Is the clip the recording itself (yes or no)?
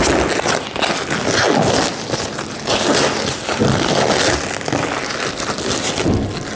yes